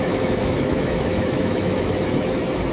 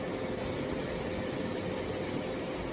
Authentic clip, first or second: second